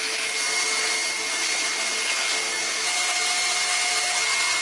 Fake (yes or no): no